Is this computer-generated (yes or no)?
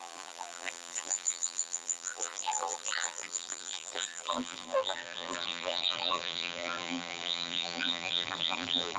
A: yes